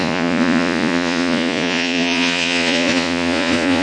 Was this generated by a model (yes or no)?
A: yes